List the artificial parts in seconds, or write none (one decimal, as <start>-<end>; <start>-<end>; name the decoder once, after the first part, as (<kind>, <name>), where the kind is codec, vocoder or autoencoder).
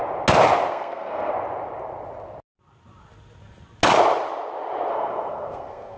0.7-1.3 (codec, SNAC); 4.9-6.0